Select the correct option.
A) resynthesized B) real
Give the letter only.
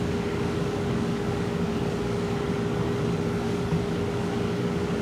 A